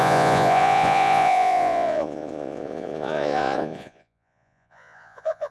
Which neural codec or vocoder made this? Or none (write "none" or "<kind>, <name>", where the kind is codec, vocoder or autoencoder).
vocoder, Vocos